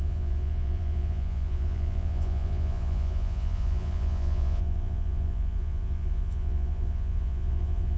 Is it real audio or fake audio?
fake